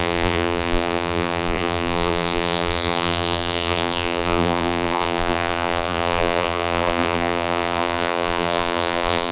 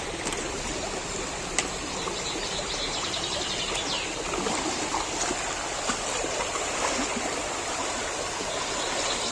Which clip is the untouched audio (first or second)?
second